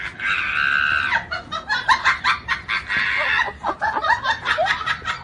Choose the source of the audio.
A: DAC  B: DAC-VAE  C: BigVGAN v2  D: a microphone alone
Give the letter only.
D